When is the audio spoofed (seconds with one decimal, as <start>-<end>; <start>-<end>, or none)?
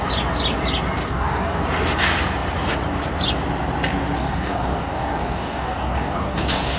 1.0-1.6; 4.2-6.8